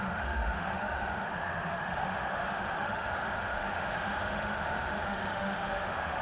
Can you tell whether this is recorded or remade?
remade